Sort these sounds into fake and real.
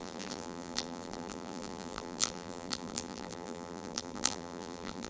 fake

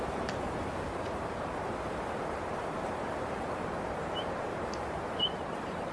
fake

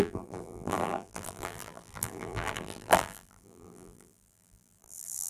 fake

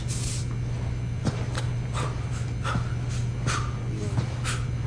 real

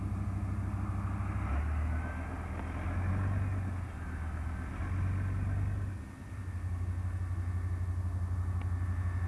real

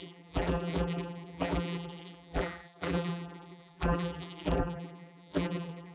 fake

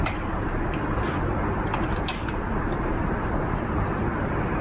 real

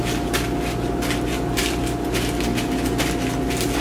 real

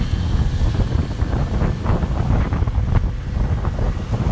real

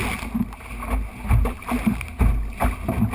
real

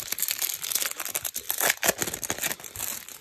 real